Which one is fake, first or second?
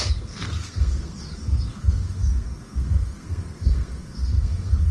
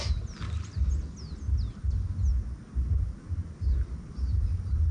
first